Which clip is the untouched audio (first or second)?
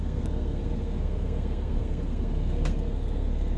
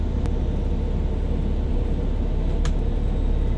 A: second